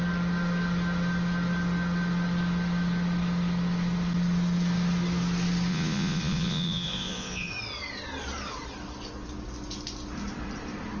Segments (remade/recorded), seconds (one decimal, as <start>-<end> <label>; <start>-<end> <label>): 0.0-5.7 recorded; 5.7-7.5 remade; 7.5-11.0 recorded

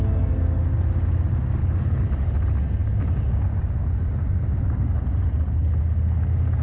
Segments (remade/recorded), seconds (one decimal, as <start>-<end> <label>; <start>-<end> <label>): 0.0-1.6 recorded; 1.6-2.1 remade; 2.1-6.6 recorded

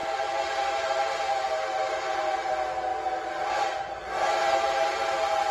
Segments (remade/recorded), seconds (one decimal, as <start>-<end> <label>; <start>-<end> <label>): 0.0-5.5 recorded

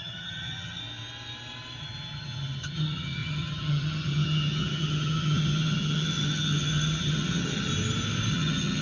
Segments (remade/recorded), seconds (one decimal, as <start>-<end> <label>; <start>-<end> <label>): 0.0-0.8 remade; 0.8-1.8 recorded; 1.8-7.7 remade; 7.7-8.3 recorded; 8.3-8.8 remade

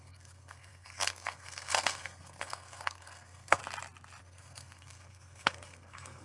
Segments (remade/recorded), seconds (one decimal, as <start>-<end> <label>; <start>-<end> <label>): 0.0-3.6 remade; 3.6-4.2 recorded; 4.2-6.2 remade